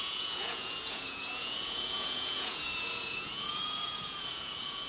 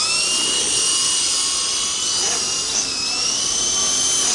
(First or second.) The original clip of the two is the second